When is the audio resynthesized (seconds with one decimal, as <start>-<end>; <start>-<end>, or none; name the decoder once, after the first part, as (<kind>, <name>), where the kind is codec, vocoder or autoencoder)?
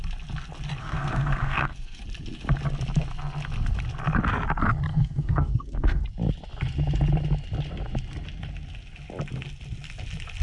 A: 0.8-2.0 (codec, SNAC); 4.9-6.0